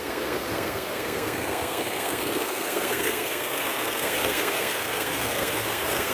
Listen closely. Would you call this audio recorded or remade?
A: remade